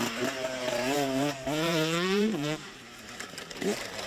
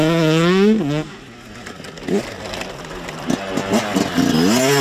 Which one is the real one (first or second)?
second